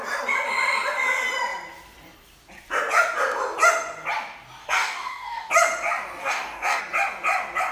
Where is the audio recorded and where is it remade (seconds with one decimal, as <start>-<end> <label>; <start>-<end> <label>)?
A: 0.0-4.6 recorded; 4.6-5.5 remade; 5.5-6.2 recorded; 6.2-6.8 remade; 6.8-7.7 recorded